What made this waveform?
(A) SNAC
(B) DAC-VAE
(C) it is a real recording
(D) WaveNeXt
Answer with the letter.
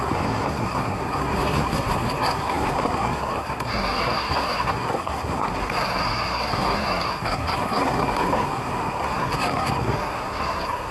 A